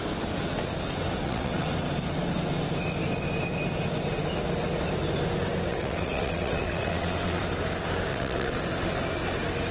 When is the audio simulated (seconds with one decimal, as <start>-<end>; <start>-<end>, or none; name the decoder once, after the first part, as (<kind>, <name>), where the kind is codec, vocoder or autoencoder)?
1.2-1.7 (vocoder, WaveNeXt); 5.7-7.4; 8.1-8.6